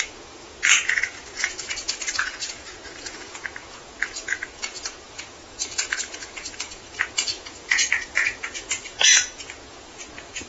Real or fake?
fake